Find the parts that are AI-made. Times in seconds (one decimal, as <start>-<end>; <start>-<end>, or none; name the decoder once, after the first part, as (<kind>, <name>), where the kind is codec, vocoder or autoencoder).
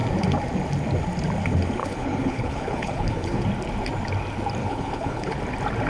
1.8-3.4 (codec, HILCodec); 4.6-5.4